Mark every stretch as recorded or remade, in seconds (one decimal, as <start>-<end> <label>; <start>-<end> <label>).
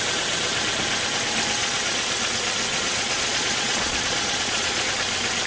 0.0-1.6 recorded; 1.6-2.2 remade; 2.2-2.7 recorded; 2.7-4.9 remade; 4.9-5.5 recorded